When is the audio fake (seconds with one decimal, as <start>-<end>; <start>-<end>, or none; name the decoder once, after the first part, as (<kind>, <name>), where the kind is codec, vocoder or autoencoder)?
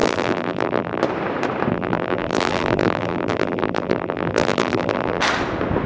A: 0.0-1.0 (vocoder, BigVGAN v2); 1.7-5.2